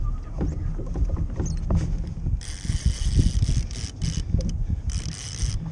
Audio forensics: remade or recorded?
recorded